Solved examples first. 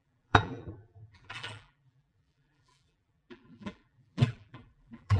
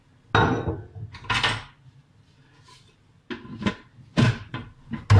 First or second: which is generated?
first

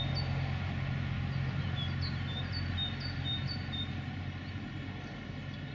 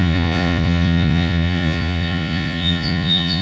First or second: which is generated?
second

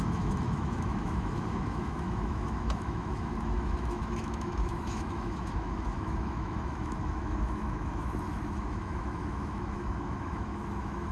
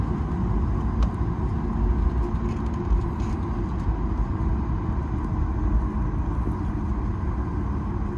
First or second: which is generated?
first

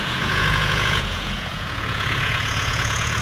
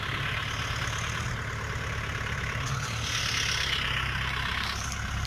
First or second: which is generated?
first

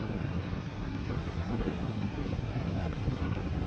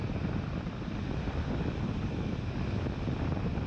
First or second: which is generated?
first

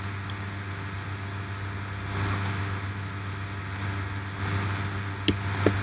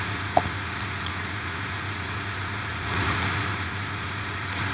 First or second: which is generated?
second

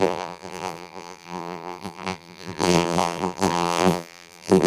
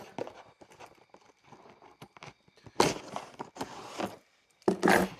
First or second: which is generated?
first